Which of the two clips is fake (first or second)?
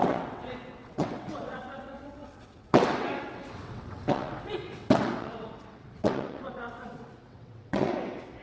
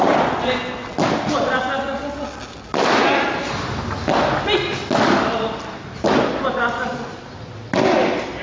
first